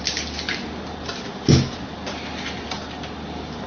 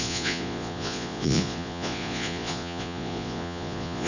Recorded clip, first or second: first